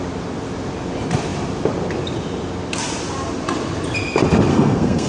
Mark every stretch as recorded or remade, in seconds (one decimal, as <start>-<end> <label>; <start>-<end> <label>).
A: 0.0-4.5 recorded; 4.5-5.1 remade